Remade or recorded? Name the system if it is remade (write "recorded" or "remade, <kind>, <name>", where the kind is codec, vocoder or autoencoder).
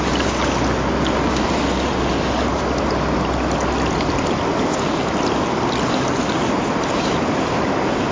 recorded